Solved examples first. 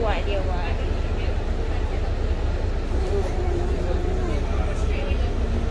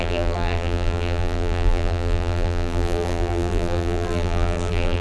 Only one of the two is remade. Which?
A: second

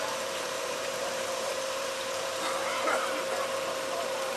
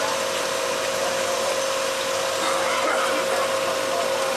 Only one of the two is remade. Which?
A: first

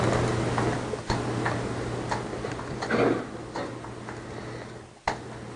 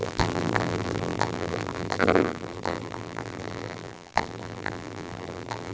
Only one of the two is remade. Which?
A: second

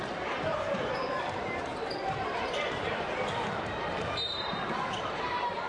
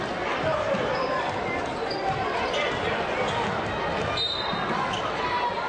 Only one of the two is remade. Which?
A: first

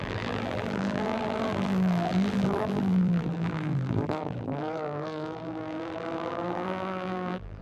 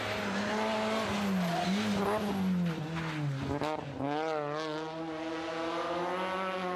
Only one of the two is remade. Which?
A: first